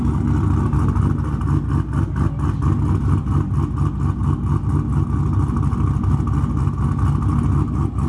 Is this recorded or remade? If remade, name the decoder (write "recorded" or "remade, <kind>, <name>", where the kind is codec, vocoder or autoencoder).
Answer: recorded